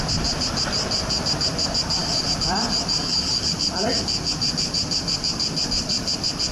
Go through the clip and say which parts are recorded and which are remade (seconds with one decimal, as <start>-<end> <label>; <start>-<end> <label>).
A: 0.0-2.0 recorded; 2.0-5.9 remade; 5.9-6.5 recorded